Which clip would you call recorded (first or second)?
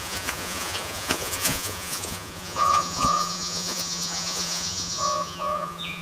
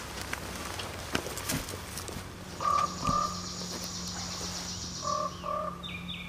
second